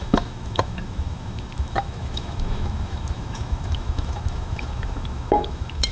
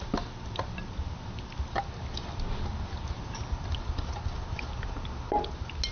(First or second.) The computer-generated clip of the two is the first